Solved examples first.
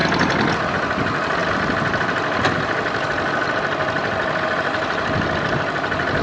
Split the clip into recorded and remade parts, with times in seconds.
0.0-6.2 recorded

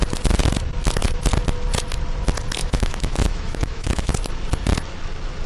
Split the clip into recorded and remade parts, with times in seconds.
0.0-2.6 recorded; 2.6-4.1 remade; 4.1-5.5 recorded

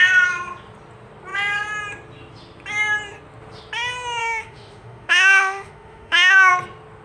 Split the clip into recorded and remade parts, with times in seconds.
0.0-4.2 recorded; 4.2-6.5 remade; 6.5-7.0 recorded

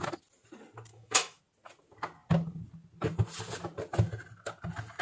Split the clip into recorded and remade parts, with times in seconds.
0.0-0.9 recorded; 0.9-1.4 remade; 1.4-5.0 recorded

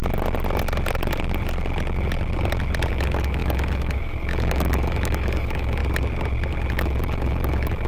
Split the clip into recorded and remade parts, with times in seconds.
0.0-2.9 recorded; 2.9-5.8 remade; 5.8-6.7 recorded; 6.7-7.9 remade